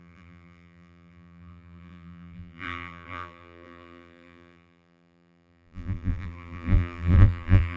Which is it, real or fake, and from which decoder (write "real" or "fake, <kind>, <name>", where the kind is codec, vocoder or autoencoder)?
fake, vocoder, BigVGAN v2